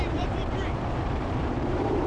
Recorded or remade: remade